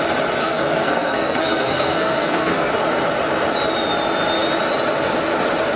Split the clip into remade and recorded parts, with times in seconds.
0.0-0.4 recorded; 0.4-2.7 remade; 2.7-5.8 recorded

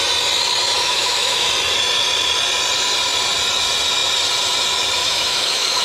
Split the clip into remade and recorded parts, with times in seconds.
0.0-0.8 recorded; 0.8-1.5 remade; 1.5-5.0 recorded; 5.0-5.8 remade

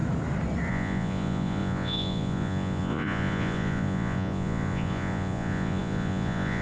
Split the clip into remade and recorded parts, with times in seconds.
0.0-0.7 recorded; 0.7-6.6 remade

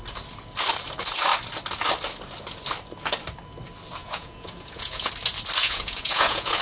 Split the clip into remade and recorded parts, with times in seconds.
0.0-4.0 recorded; 4.0-5.1 remade; 5.1-5.6 recorded; 5.6-6.6 remade

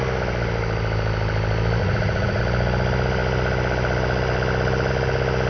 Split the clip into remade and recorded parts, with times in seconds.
0.0-1.8 recorded; 1.8-2.4 remade; 2.4-5.5 recorded